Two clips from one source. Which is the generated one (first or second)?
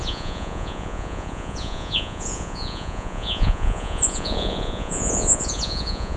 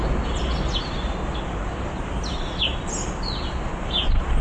first